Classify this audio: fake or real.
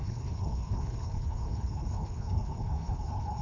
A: fake